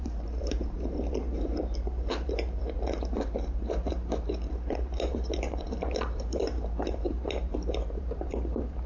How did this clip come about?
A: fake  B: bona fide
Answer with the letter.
A